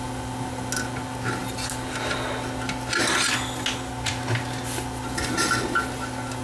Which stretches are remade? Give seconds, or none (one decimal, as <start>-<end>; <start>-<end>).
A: none